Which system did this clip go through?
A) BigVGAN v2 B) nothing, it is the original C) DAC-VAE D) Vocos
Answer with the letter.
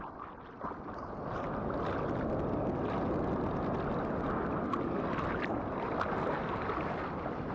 B